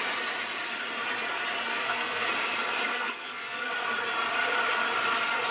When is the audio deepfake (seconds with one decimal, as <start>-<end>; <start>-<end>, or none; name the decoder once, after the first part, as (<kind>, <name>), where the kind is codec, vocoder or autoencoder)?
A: 1.7-2.3 (codec, SNAC); 2.9-3.7